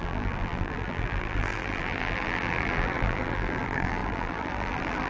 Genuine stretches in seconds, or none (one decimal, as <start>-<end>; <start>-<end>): none